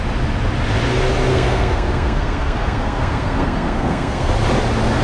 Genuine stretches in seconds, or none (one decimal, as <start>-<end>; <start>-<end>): 0.0-1.3; 4.3-5.0